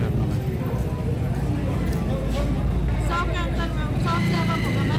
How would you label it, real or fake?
real